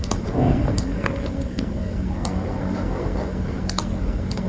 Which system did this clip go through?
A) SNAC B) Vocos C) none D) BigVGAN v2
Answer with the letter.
A